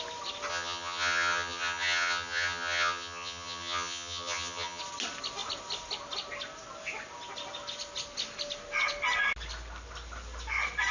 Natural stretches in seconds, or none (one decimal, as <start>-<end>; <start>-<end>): 0.0-0.5; 4.8-10.9